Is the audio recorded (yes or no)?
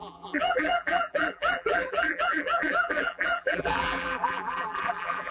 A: no